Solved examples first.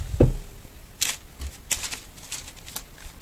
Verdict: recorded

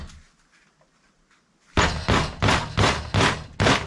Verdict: recorded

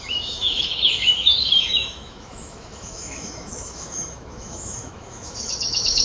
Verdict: remade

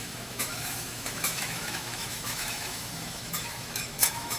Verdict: remade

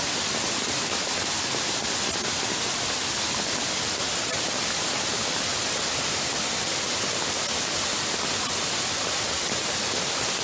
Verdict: recorded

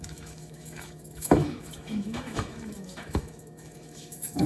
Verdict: remade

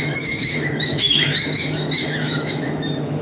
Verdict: remade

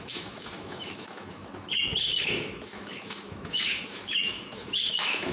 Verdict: remade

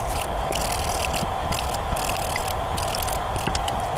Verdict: recorded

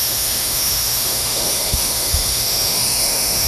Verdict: remade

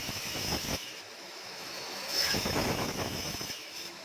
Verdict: remade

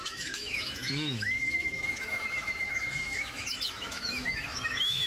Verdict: remade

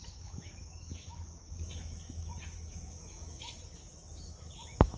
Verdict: remade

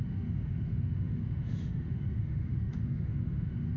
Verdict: remade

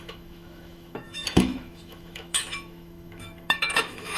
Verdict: remade